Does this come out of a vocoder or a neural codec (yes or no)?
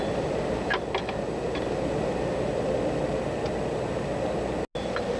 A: no